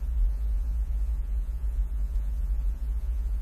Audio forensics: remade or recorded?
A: remade